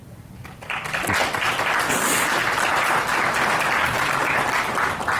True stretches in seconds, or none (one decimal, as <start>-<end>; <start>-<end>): 0.0-5.2